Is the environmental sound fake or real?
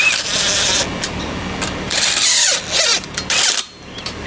real